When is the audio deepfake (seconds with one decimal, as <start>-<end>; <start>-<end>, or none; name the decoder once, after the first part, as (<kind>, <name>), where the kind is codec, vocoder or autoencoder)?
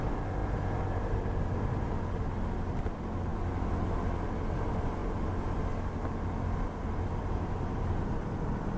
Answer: none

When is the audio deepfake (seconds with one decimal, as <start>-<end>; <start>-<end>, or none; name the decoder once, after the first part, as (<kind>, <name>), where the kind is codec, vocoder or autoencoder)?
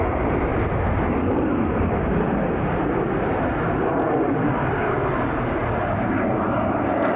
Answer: 0.5-4.8 (vocoder, BigVGAN v2)